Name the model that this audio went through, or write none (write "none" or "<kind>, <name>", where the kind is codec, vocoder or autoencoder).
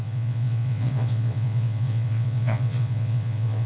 vocoder, WaveNeXt